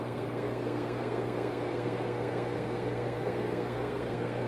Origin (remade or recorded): remade